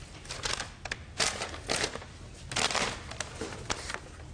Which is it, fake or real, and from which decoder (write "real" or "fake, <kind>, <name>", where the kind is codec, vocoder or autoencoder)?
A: real